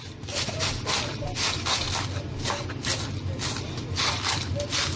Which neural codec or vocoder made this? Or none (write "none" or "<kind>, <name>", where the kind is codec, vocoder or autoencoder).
none